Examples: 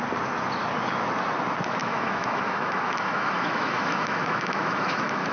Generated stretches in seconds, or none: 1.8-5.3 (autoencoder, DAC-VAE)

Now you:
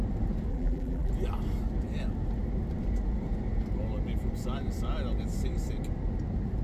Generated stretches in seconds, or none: 0.5-1.1 (vocoder, BigVGAN v2)

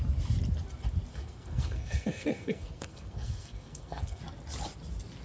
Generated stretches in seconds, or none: 1.1-4.2 (codec, SNAC)

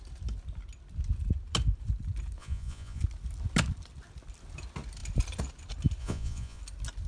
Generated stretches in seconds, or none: 2.4-3.0 (vocoder, Vocos); 6.0-6.6

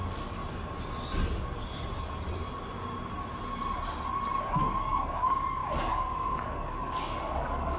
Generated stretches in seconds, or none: 0.0-0.4 (codec, DAC); 4.4-7.8

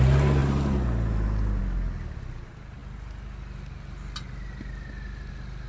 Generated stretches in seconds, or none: none

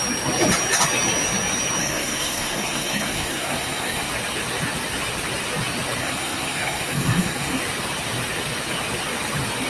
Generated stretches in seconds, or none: 1.8-4.1 (codec, SNAC); 6.0-7.6

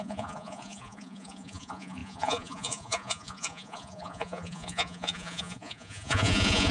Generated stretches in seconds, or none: 0.0-6.7 (vocoder, Vocos)